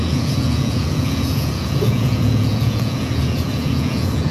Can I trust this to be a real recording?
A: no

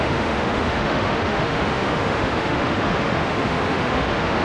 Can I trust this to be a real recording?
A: no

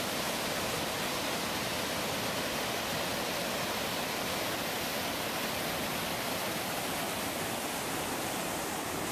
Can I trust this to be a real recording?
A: yes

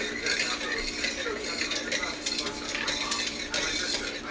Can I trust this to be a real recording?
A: yes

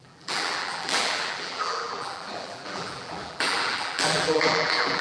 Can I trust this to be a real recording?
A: no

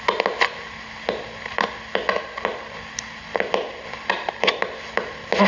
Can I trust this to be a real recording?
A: yes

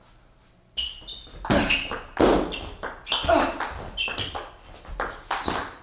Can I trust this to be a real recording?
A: yes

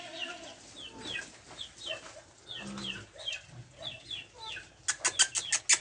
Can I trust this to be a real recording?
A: yes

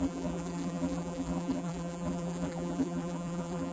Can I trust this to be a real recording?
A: no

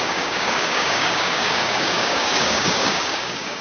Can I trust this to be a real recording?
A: no